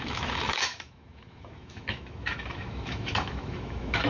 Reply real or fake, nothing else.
fake